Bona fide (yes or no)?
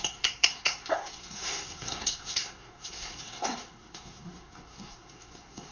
no